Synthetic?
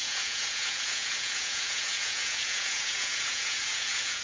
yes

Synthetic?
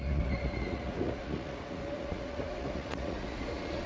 yes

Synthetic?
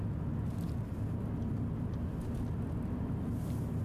no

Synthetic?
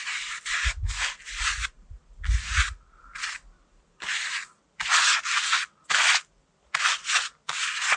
no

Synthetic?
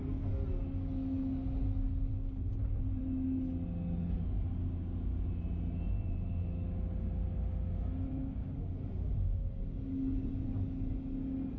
no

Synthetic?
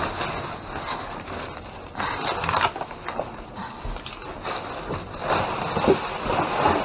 no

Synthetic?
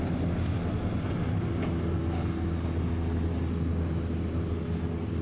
no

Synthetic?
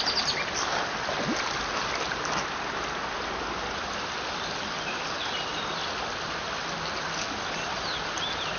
no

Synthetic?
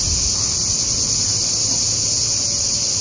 no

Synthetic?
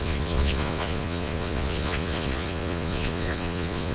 yes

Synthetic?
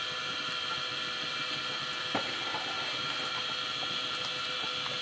no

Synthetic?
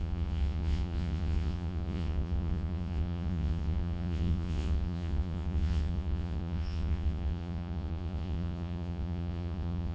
yes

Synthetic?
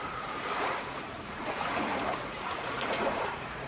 yes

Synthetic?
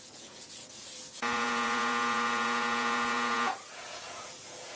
yes